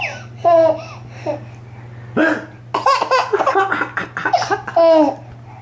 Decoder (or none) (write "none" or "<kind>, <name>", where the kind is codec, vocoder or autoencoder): none